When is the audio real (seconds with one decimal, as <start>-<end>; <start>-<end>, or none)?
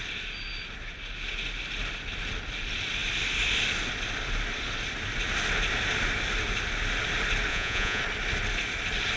0.0-7.5; 8.0-9.2